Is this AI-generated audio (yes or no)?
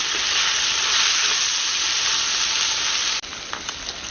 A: no